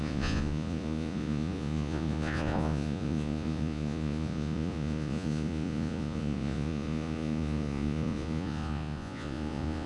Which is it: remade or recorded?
remade